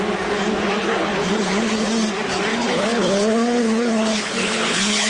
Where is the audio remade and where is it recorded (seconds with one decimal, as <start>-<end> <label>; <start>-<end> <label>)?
0.0-0.8 recorded; 0.8-1.7 remade; 1.7-2.5 recorded; 2.5-5.1 remade

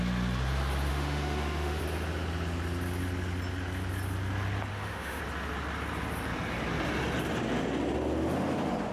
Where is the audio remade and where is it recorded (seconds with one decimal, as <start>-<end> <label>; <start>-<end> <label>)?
0.0-0.9 recorded; 0.9-1.8 remade; 1.8-4.7 recorded; 4.7-5.2 remade; 5.2-8.9 recorded